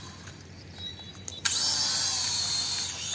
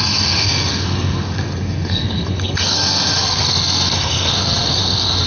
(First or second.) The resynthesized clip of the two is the second